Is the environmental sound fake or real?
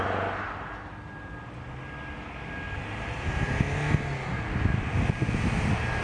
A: real